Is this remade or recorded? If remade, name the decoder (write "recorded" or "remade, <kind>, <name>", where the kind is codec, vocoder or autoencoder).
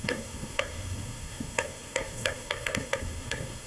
remade, codec, SNAC